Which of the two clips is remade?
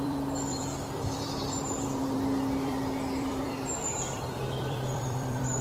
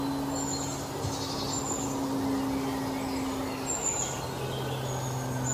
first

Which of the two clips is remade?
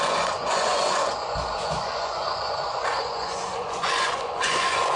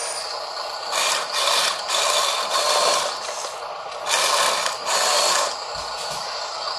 first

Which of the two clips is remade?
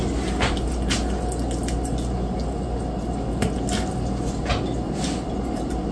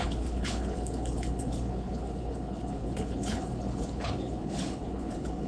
second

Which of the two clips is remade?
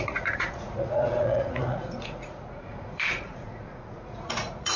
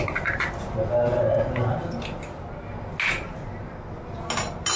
first